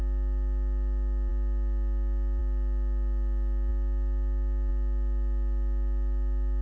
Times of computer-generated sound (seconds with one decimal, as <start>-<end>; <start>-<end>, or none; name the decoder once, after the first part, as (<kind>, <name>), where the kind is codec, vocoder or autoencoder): none